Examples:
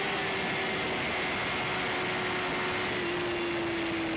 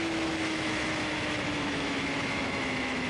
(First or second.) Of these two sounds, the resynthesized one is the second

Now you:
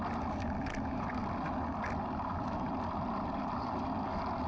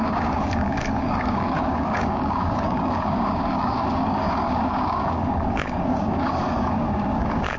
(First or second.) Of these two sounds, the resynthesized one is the second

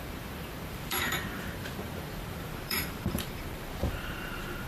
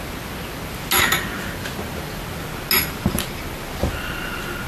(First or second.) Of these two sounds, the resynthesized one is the first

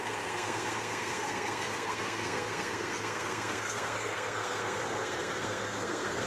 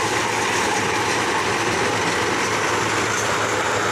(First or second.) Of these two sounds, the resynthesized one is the first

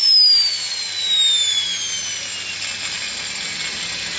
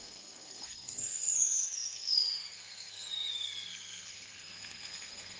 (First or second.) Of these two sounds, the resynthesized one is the second